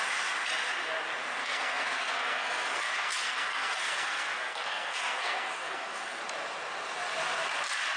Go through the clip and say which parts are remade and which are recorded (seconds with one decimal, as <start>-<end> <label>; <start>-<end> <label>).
0.0-1.4 recorded; 1.4-6.2 remade; 6.2-8.0 recorded